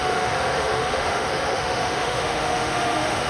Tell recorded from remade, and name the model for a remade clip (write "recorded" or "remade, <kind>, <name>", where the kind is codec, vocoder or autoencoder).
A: remade, autoencoder, DAC-VAE